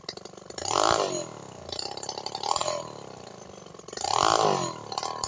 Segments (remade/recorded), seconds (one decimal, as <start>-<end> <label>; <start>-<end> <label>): 0.0-5.3 recorded